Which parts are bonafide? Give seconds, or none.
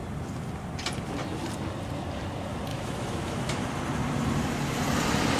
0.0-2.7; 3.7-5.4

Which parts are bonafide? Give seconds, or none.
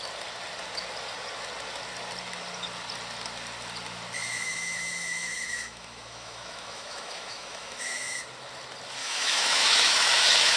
0.0-4.2; 8.2-9.0